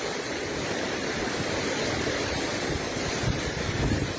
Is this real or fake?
fake